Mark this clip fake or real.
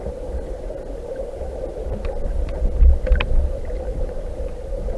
real